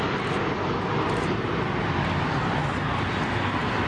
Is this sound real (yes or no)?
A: yes